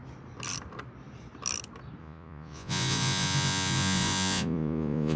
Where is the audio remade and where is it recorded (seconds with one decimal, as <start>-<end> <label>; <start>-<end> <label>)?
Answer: 0.0-2.0 recorded; 2.0-5.2 remade